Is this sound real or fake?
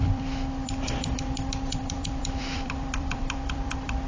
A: fake